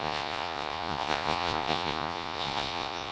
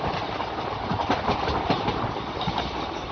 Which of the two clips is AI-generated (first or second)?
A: first